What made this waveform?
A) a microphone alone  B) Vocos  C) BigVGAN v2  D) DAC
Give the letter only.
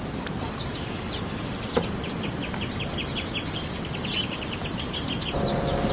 C